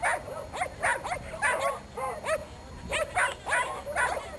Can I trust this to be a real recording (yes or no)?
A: yes